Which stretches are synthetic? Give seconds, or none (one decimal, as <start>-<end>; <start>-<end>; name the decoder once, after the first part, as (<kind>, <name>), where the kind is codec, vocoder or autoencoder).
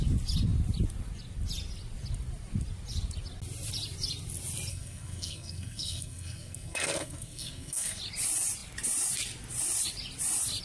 4.7-8.0 (codec, SNAC)